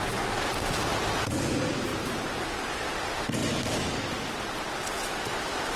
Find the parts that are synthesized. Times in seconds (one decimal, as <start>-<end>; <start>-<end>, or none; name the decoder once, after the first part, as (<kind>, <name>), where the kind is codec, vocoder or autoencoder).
1.9-2.4 (vocoder, BigVGAN v2)